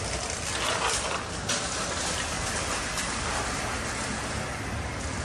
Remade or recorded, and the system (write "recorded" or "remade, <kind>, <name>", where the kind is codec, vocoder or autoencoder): recorded